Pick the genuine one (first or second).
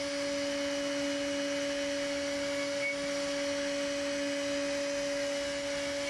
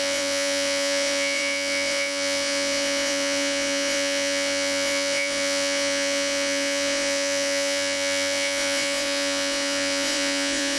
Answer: first